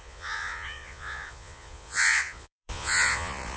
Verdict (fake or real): fake